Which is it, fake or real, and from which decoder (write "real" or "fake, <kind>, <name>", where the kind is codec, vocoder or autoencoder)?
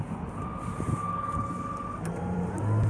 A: real